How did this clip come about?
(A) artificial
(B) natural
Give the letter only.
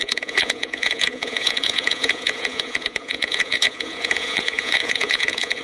A